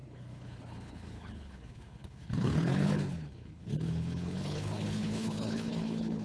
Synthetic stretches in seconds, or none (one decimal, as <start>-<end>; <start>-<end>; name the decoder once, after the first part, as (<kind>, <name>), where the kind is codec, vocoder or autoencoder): 0.0-6.2 (codec, HILCodec)